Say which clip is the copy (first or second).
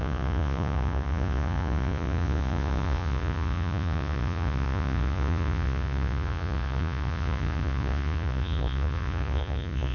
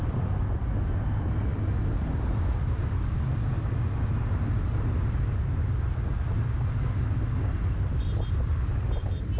first